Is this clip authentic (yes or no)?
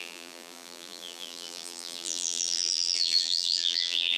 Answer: no